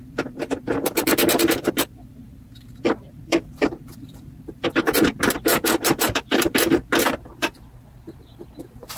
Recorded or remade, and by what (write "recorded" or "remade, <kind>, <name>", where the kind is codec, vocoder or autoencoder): remade, vocoder, BigVGAN v2